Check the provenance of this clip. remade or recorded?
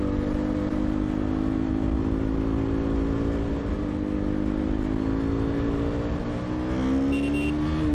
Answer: recorded